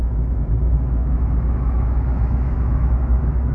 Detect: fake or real fake